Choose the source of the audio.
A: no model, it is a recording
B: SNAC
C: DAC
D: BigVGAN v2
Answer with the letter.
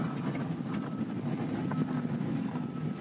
A